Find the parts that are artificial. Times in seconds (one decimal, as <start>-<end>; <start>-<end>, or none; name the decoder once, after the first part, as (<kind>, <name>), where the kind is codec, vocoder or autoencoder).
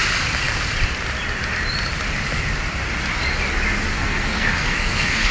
3.9-5.3 (codec, SNAC)